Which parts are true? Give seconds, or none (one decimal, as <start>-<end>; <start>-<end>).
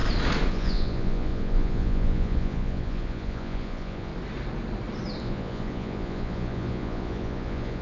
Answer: 0.0-0.5; 4.1-5.2